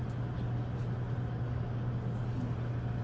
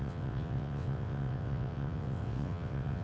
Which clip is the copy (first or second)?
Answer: second